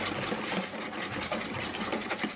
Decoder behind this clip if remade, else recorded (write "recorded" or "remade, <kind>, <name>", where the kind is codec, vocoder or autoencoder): recorded